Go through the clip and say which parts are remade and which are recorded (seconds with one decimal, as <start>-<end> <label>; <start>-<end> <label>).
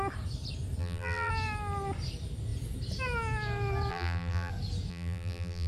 0.0-0.8 recorded; 0.8-1.3 remade; 1.3-3.9 recorded; 3.9-4.5 remade; 4.5-4.9 recorded; 4.9-5.7 remade